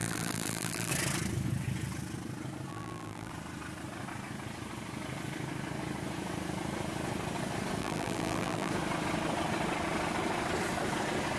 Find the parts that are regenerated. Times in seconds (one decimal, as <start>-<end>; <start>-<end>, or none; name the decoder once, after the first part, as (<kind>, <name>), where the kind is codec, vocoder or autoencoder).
0.0-0.9 (vocoder, BigVGAN v2); 2.7-3.3; 7.8-8.7